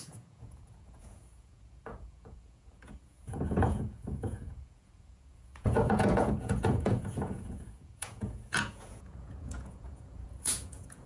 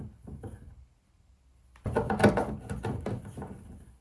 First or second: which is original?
second